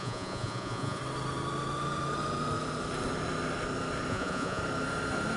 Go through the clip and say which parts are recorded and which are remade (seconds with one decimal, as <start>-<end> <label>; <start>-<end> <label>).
0.0-1.0 remade; 1.0-4.1 recorded; 4.1-4.6 remade; 4.6-5.4 recorded